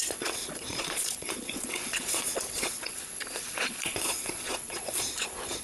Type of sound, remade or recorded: remade